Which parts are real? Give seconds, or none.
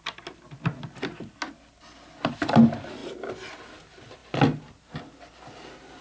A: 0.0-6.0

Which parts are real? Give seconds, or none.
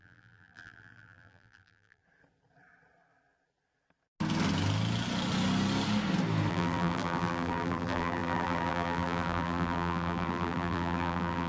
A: 2.0-6.5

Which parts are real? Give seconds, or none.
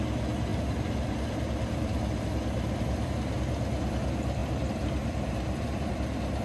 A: 0.0-0.5; 3.1-4.4; 5.9-6.4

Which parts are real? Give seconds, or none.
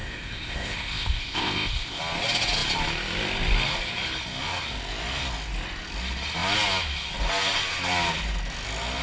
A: 2.0-9.0